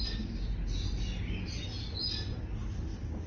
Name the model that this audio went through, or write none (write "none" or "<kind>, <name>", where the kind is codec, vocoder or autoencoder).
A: none